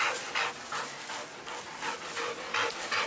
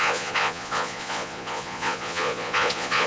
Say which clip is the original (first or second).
first